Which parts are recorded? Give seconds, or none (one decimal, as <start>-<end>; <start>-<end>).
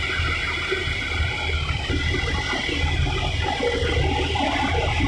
0.0-5.1